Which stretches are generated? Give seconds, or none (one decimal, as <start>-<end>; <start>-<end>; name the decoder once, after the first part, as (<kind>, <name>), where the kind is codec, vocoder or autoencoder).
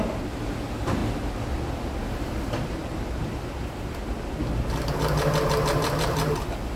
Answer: none